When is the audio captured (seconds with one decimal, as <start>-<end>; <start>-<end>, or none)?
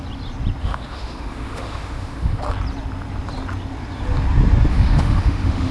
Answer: 0.0-0.6; 2.4-4.7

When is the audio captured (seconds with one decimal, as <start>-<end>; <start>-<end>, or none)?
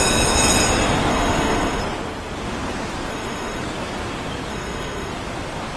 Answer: 0.0-1.1; 1.8-3.1; 3.6-4.5; 5.1-5.8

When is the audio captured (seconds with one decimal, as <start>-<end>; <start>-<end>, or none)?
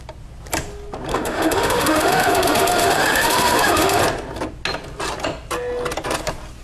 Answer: 0.0-1.1; 4.0-6.6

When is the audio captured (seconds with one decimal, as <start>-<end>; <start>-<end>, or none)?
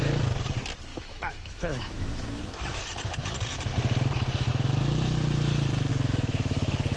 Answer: 0.0-0.9; 2.8-5.9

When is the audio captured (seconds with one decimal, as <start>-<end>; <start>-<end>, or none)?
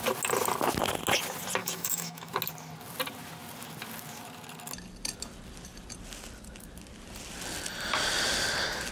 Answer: 0.0-1.6; 2.3-8.9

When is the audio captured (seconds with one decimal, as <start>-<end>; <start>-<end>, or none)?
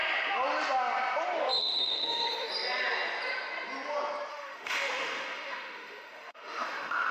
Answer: 0.0-1.6; 2.5-4.3